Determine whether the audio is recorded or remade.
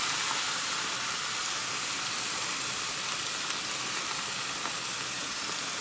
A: recorded